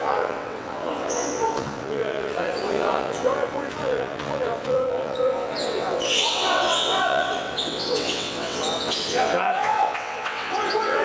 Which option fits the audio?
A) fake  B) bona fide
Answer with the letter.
A